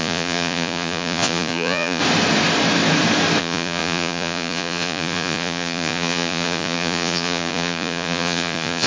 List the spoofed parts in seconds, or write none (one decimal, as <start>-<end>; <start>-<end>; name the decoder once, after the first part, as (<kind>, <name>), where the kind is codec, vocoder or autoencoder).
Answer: 0.0-2.0 (vocoder, Vocos); 3.4-8.9

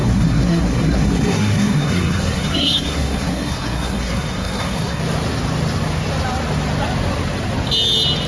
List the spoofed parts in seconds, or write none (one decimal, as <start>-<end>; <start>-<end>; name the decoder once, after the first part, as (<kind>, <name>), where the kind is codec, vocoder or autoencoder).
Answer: 0.0-5.0 (codec, SNAC)

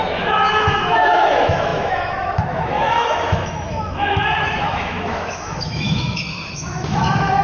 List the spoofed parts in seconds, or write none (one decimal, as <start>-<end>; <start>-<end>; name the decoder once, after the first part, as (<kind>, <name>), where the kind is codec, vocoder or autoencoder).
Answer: 0.0-7.4 (autoencoder, DAC-VAE)